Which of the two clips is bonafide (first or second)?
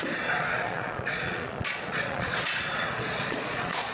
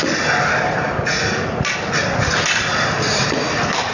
second